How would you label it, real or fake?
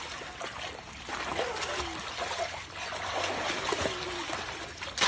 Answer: real